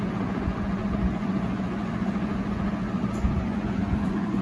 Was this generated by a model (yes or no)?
yes